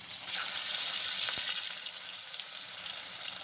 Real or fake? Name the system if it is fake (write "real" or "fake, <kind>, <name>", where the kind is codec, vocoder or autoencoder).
real